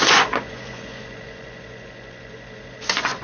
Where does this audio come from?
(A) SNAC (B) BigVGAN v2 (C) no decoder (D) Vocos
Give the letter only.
D